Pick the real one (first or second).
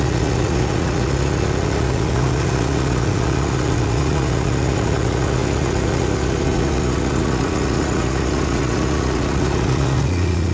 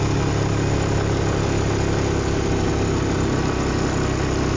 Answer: second